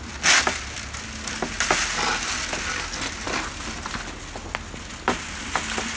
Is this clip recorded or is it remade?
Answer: recorded